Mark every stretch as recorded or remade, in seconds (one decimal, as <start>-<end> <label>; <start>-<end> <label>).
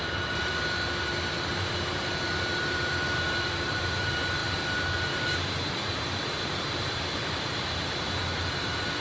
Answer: 0.0-0.5 remade; 0.5-1.5 recorded; 1.5-9.0 remade